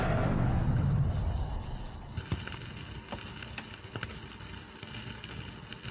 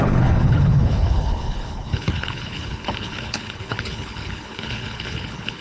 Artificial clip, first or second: second